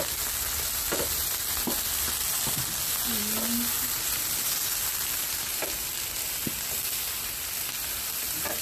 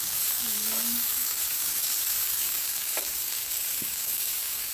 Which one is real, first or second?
first